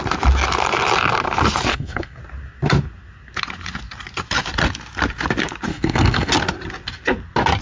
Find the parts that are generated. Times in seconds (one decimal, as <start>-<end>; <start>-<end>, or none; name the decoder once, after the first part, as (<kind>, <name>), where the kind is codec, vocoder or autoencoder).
1.7-2.2 (codec, SNAC); 5.7-6.3